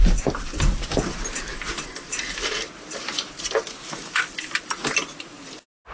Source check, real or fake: real